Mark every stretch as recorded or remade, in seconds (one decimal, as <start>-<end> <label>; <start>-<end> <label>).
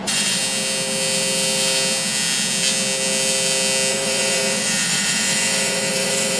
0.0-0.4 remade; 0.4-3.9 recorded; 3.9-6.4 remade